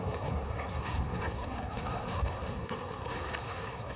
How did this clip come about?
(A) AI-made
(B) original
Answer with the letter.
A